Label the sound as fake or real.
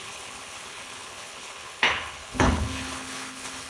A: fake